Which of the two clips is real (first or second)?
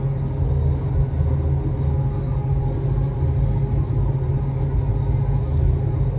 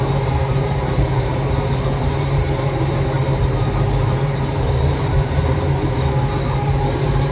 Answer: first